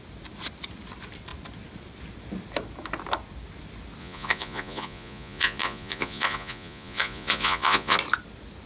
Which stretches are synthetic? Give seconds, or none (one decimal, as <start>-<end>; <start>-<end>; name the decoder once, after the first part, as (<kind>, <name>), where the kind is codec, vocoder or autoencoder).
4.0-8.0 (vocoder, Vocos)

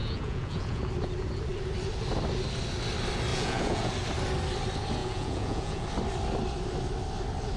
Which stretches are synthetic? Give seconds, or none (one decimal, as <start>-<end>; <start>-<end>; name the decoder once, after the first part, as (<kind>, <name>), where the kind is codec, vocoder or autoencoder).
0.0-0.9 (vocoder, Vocos); 3.3-3.9; 5.0-5.9

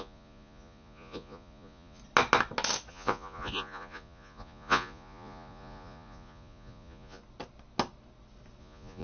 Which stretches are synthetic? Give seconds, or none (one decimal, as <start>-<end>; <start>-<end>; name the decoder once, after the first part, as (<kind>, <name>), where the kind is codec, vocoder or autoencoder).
0.0-2.0 (vocoder, Vocos); 2.9-7.2; 8.6-9.0

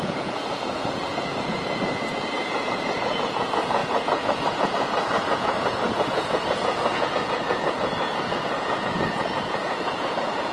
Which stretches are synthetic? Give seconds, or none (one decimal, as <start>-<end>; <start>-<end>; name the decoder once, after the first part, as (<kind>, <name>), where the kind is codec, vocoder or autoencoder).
0.0-10.5 (vocoder, Vocos)

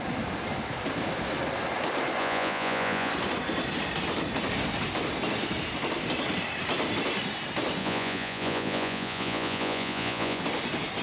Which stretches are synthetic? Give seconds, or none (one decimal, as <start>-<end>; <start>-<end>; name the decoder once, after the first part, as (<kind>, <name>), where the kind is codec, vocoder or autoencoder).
2.2-3.1 (vocoder, Vocos); 7.8-10.4

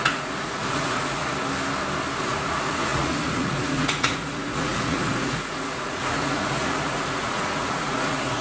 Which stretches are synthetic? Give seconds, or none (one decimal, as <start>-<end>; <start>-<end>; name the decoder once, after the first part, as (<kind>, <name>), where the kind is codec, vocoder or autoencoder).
0.0-1.2 (vocoder, Vocos); 2.2-8.4